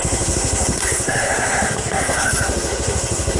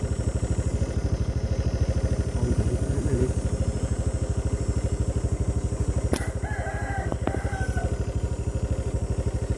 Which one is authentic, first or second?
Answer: second